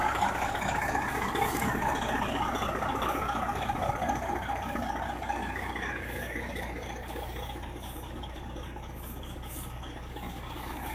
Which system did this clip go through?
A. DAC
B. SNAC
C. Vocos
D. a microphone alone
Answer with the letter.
A